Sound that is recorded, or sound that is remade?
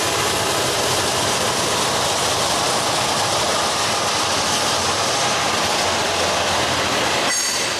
recorded